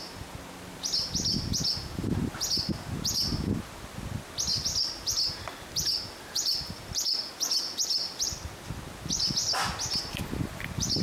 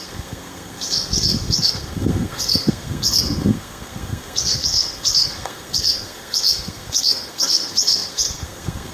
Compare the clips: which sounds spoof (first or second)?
second